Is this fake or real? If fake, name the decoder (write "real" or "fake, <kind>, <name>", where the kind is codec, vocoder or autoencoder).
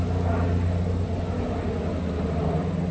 real